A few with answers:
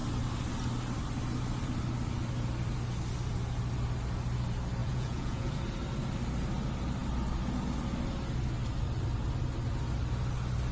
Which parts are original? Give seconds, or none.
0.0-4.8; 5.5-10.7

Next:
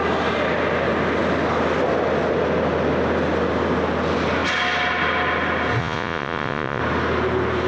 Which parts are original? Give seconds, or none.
0.0-5.8; 6.8-7.7

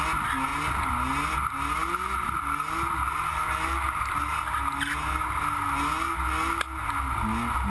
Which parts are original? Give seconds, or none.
0.0-7.7